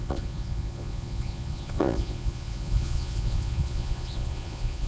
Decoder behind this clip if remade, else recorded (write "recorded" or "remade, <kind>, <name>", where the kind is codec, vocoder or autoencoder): remade, vocoder, Vocos